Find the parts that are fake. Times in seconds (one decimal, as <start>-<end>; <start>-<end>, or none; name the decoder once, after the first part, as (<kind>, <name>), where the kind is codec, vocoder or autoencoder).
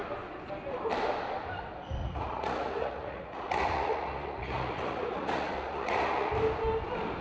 2.0-6.3 (vocoder, Vocos)